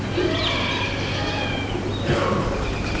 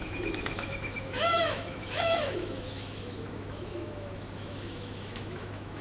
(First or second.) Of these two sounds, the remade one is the second